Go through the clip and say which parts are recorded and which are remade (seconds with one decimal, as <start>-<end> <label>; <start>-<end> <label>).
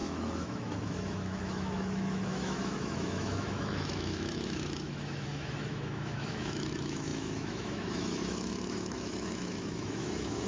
0.0-10.5 remade